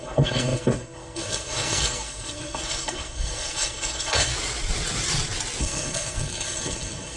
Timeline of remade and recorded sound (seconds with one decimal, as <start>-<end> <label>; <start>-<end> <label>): 0.0-4.3 remade; 4.3-5.6 recorded; 5.6-7.2 remade